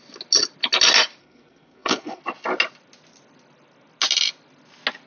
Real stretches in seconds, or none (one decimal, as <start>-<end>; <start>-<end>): 0.0-1.2; 2.2-5.1

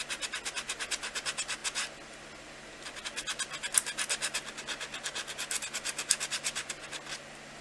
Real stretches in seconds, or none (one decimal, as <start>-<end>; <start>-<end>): 0.0-7.6

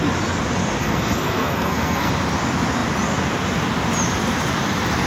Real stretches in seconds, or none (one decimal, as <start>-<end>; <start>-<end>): 0.0-0.8; 2.1-5.1